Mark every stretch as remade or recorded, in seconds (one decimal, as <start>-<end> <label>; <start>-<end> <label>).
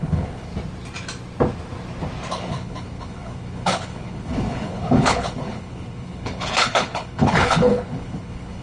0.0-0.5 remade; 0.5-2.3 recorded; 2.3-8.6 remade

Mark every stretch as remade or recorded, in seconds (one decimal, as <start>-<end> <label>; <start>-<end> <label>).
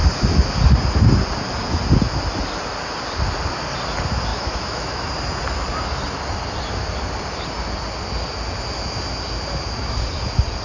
0.0-4.3 recorded; 4.3-5.1 remade; 5.1-10.6 recorded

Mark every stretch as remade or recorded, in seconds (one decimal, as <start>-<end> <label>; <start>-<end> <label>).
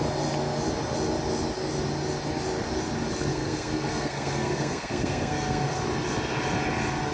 0.0-3.3 recorded; 3.3-5.8 remade; 5.8-7.1 recorded